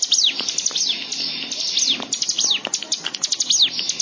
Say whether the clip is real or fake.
real